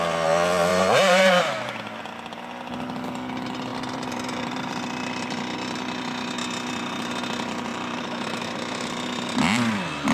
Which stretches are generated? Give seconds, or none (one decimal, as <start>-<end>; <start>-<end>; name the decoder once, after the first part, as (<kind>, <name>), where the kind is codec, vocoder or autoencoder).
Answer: 0.7-2.0 (vocoder, BigVGAN v2); 3.7-4.7; 7.7-8.9